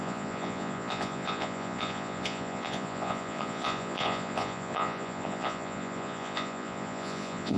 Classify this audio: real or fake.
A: fake